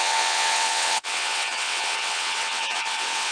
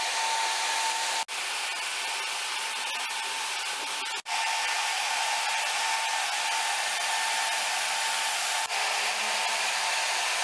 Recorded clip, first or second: second